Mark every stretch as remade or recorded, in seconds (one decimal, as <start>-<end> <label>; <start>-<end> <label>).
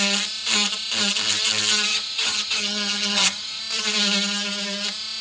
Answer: 0.0-1.9 recorded; 1.9-3.6 remade; 3.6-5.2 recorded